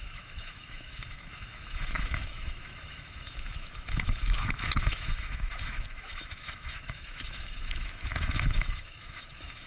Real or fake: fake